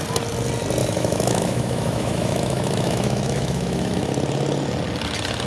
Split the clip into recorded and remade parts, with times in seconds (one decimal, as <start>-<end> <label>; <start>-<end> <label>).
0.0-0.8 recorded; 0.8-4.1 remade; 4.1-5.5 recorded